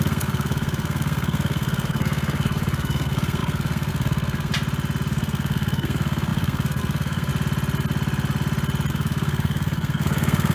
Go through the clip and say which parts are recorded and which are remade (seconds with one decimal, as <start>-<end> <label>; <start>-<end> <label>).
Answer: 0.0-4.5 remade; 4.5-5.1 recorded; 5.1-7.3 remade; 7.3-8.9 recorded; 8.9-10.5 remade